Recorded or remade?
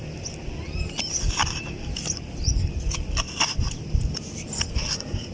recorded